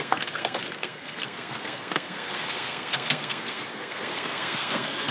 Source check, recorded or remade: remade